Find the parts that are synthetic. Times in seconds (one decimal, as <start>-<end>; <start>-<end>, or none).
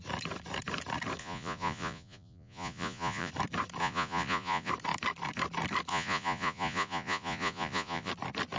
1.2-3.3; 3.8-4.7; 5.9-8.1